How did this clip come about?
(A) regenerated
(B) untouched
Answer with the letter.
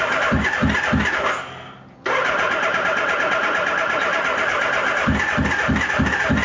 B